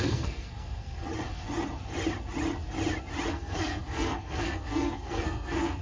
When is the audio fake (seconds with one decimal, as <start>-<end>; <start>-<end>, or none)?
0.0-1.1; 3.3-5.8

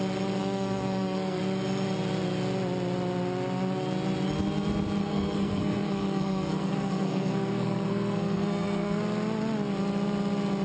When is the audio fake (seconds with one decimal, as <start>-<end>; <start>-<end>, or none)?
0.4-1.4; 5.0-9.0

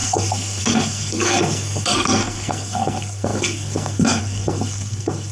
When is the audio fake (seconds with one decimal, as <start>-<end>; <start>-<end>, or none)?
0.0-5.3